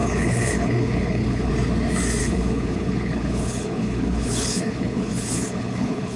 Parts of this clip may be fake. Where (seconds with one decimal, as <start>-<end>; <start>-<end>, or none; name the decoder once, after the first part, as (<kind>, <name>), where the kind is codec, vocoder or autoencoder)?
0.0-1.5 (codec, HILCodec); 2.2-6.2